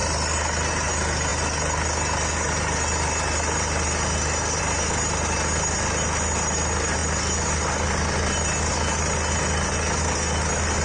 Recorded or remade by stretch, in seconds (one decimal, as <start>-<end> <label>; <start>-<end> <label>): 0.0-10.8 recorded